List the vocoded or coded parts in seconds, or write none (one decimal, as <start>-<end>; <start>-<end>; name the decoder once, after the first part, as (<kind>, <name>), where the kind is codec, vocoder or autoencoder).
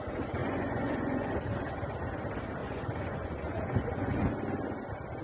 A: 0.4-1.3 (vocoder, Vocos); 2.6-4.3